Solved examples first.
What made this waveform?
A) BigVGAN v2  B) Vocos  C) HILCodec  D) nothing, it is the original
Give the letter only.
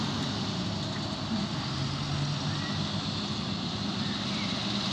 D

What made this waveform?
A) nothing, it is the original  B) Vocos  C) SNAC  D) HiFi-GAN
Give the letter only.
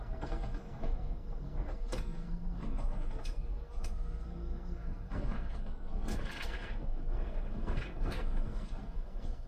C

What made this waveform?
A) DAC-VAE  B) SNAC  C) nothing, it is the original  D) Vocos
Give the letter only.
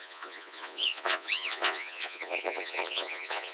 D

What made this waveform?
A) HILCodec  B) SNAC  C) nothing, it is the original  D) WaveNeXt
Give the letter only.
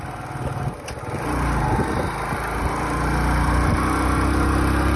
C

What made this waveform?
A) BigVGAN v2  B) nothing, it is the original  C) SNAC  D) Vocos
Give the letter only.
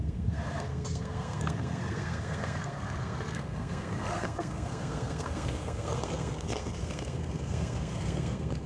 C